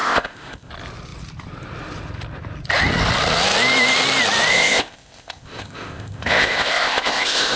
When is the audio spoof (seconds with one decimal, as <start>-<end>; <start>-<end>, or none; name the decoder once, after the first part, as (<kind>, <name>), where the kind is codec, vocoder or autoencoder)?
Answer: 0.0-0.7 (codec, ZipCodec); 4.5-7.6